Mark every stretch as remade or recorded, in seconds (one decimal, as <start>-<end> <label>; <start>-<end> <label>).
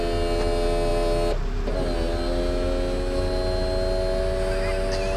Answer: 0.0-5.2 recorded